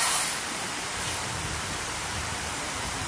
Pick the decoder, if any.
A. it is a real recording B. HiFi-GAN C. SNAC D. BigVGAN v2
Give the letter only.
D